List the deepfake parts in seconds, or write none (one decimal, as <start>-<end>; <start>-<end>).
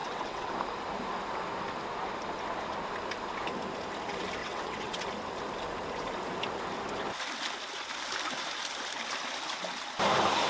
0.0-0.5; 4.4-5.0